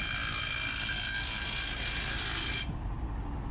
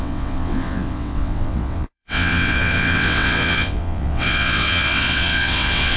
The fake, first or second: second